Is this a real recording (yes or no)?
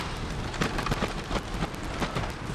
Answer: yes